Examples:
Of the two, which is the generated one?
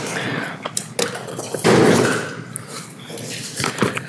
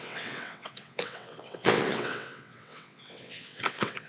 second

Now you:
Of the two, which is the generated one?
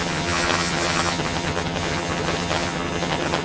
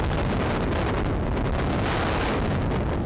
first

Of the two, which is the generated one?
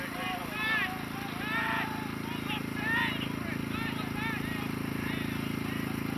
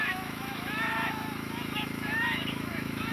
second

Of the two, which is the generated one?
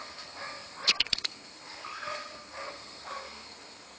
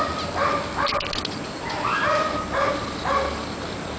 first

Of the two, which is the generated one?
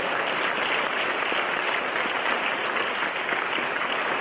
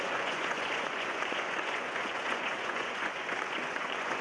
second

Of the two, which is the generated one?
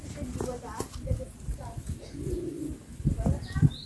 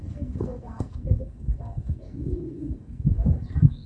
second